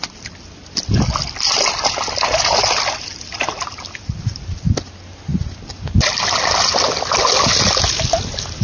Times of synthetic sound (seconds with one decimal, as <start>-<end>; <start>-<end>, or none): none